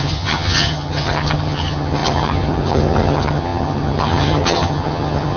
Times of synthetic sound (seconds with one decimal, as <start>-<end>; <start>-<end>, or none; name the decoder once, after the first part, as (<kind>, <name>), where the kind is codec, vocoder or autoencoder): 0.0-5.4 (vocoder, HiFi-GAN)